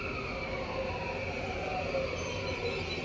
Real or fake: real